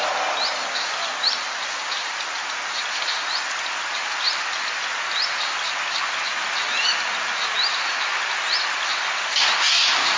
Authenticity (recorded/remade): recorded